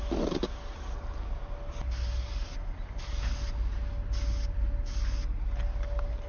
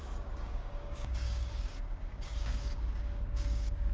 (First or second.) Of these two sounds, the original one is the first